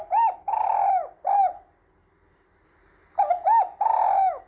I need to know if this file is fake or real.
real